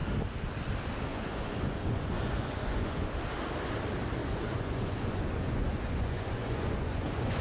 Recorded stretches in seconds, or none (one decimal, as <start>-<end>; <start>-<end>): 0.0-1.1; 3.1-4.2